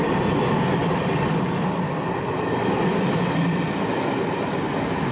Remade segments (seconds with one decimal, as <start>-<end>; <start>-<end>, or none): none